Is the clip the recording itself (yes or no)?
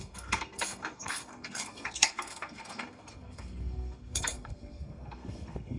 no